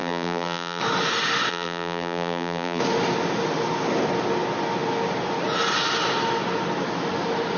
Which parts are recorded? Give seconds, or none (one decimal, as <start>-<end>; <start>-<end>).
0.8-1.5; 2.8-7.6